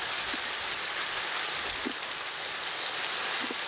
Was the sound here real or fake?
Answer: real